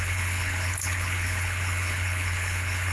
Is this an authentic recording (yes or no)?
no